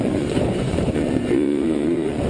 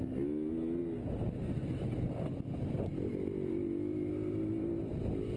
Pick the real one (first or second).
second